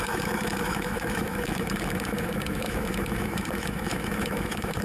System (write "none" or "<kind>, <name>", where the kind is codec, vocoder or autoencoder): autoencoder, DAC-VAE